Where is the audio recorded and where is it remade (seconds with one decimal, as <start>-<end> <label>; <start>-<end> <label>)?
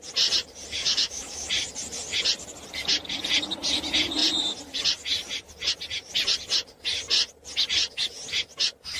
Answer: 0.0-0.8 recorded; 0.8-1.5 remade; 1.5-9.0 recorded